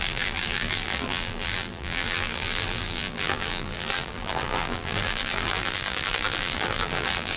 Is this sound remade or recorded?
remade